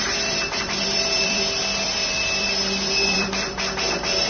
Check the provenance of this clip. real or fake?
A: fake